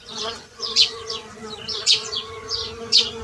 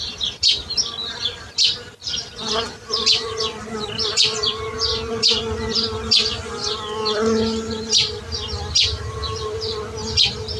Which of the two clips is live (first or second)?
second